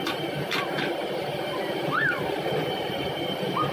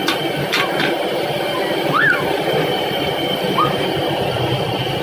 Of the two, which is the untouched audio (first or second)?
second